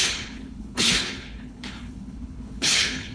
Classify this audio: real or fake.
fake